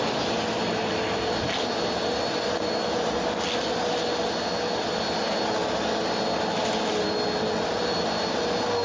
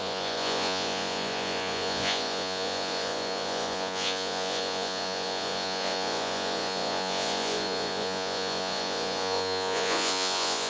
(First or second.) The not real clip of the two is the second